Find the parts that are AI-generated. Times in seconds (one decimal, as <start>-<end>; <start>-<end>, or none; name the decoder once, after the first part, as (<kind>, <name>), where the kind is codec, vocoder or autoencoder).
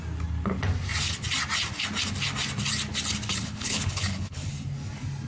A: 3.3-4.5 (codec, HILCodec)